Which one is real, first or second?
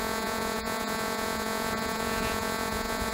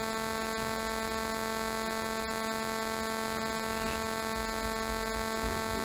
second